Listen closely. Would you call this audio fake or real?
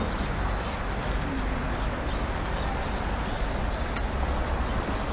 real